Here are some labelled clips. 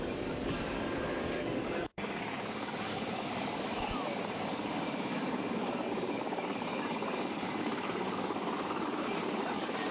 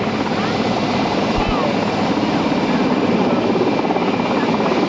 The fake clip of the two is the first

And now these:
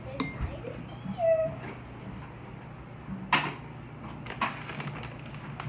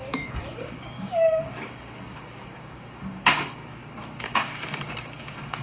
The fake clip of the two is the second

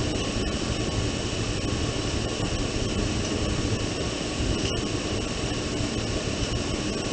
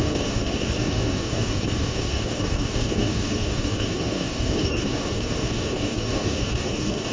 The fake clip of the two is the second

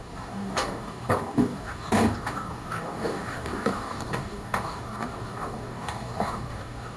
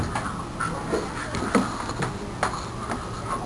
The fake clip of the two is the first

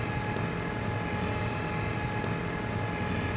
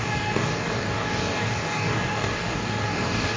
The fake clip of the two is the second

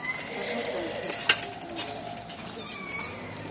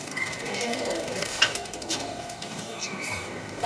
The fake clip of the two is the second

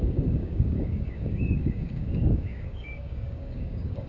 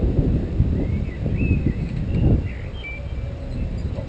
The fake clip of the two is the first